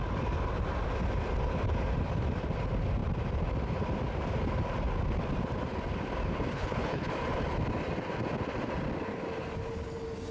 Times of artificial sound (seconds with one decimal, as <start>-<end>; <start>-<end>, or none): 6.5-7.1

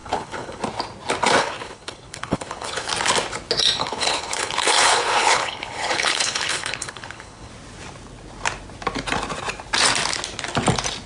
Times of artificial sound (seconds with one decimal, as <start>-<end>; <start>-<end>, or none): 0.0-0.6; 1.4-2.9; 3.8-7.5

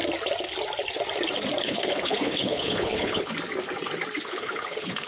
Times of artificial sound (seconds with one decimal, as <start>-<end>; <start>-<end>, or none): 1.6-3.3; 4.2-5.1